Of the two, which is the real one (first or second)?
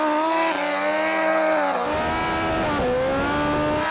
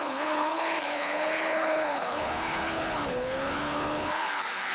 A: first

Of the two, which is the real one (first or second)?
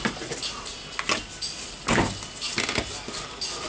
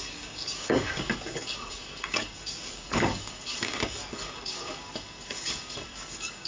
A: first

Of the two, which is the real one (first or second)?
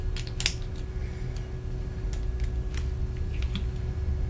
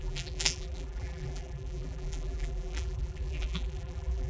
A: first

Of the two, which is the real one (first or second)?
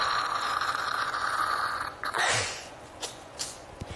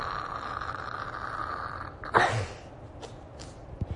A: second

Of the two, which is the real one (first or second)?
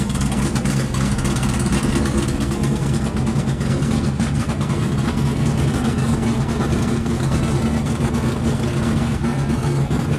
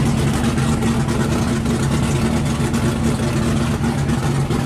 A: second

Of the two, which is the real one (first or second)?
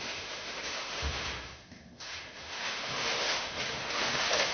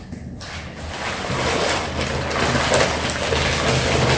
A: second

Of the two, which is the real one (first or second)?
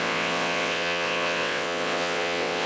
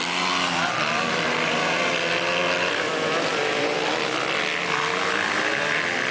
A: second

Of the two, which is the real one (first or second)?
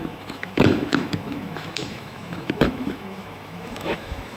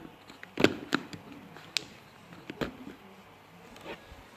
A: second